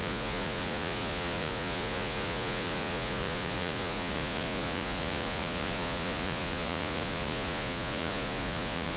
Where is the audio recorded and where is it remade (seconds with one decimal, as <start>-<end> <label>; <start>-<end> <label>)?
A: 0.0-9.0 remade